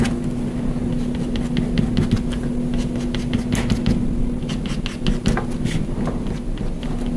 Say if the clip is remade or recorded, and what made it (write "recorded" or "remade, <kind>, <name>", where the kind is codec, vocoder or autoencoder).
recorded